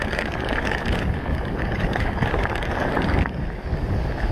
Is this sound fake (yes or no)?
yes